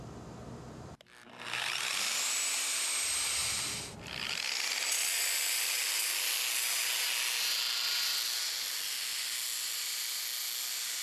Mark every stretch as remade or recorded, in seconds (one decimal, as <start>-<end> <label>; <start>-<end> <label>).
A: 0.0-11.0 recorded